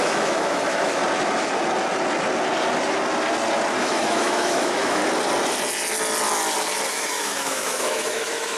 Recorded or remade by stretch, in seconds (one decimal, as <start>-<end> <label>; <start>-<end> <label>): 0.0-1.0 remade; 1.0-3.8 recorded; 3.8-5.0 remade; 5.0-6.9 recorded; 6.9-8.6 remade